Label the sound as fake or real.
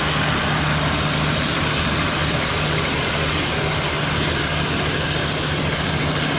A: real